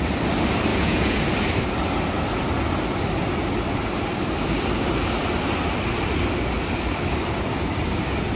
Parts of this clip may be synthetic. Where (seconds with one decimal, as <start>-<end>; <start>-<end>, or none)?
0.7-1.2